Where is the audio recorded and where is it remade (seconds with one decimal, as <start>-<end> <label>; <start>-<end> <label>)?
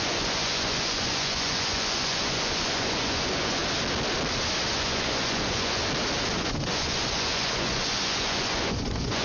0.0-3.6 remade; 3.6-4.7 recorded; 4.7-5.8 remade; 5.8-6.3 recorded; 6.3-9.2 remade